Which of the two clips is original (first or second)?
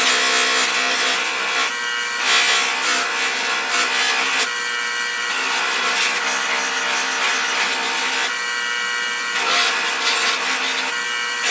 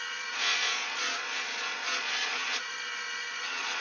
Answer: first